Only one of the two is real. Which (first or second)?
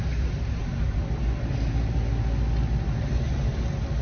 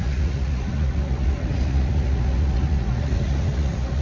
first